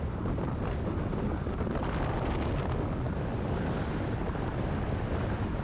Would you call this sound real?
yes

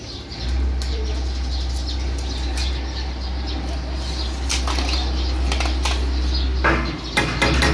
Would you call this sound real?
yes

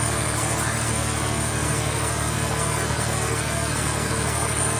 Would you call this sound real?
no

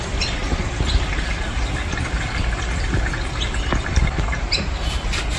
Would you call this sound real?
yes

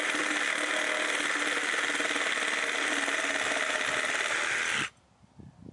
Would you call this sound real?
yes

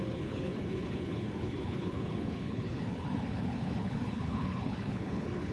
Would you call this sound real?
no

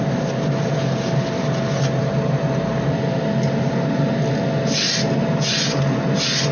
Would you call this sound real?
yes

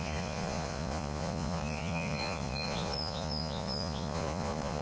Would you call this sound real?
no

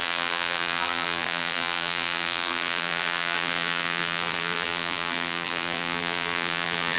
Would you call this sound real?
no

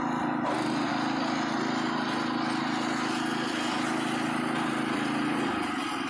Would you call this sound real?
yes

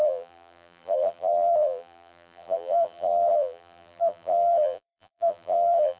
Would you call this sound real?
no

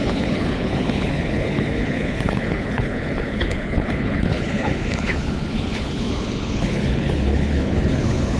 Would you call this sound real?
no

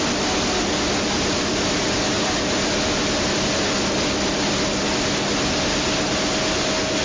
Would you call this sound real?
yes